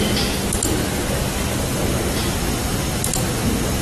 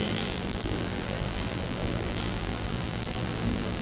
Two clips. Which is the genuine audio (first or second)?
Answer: first